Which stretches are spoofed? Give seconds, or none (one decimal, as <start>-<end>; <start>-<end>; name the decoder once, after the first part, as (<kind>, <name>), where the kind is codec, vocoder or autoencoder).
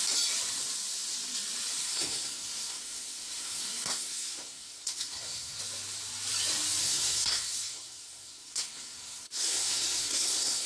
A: 1.8-5.6 (codec, SNAC); 6.8-10.7